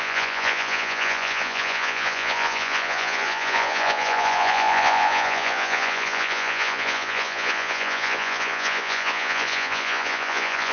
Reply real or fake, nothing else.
fake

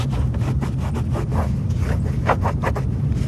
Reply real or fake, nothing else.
real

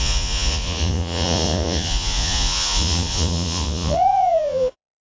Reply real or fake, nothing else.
fake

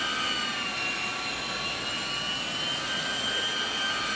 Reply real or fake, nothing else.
real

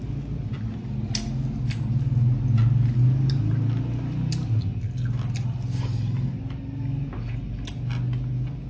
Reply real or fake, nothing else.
real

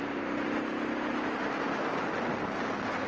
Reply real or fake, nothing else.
real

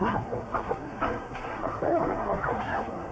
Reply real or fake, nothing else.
fake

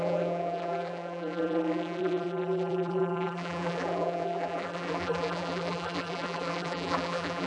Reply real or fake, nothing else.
fake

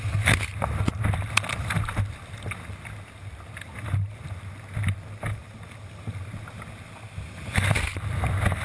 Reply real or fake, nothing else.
real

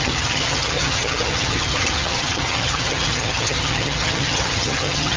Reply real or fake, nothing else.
fake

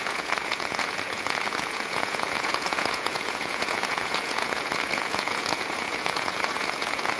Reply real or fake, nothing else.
fake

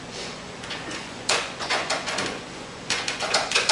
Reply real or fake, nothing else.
fake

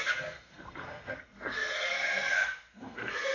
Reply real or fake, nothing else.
fake